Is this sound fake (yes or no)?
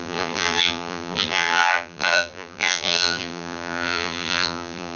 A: yes